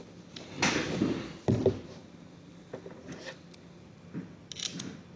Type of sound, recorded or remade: recorded